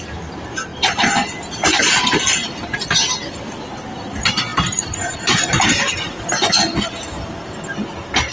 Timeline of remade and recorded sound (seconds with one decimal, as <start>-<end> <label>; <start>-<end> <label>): 0.0-8.3 recorded